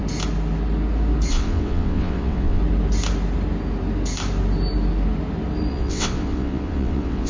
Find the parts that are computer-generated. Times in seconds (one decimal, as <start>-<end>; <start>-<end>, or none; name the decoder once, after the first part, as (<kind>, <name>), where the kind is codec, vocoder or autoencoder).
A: 1.3-2.6 (vocoder, WaveNeXt); 5.7-7.3